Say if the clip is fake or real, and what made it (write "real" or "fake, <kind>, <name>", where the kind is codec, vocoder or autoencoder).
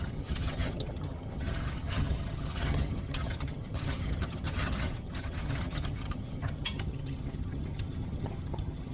fake, vocoder, HiFi-GAN